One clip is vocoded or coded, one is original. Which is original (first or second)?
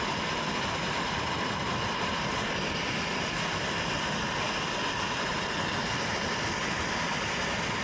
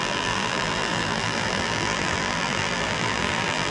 first